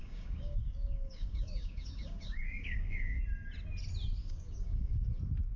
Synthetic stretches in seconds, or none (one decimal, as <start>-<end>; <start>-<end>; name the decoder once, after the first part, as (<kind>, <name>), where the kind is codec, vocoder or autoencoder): 0.0-3.2 (codec, DAC); 4.2-5.1